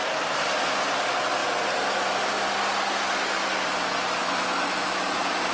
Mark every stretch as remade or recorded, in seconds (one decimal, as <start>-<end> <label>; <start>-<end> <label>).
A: 0.0-4.2 recorded; 4.2-5.5 remade